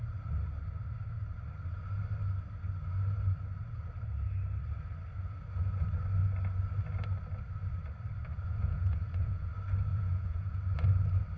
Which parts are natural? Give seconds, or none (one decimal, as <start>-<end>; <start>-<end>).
0.0-8.3; 9.5-9.9; 10.6-11.4